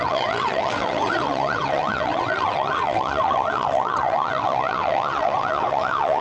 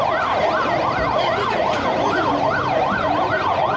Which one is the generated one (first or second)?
first